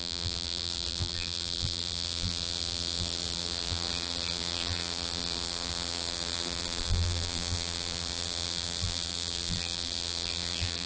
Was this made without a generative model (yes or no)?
no